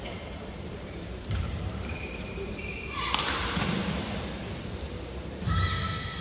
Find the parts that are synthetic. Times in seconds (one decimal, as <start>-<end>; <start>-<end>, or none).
0.0-3.8